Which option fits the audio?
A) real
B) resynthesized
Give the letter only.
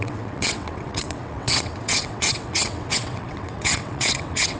B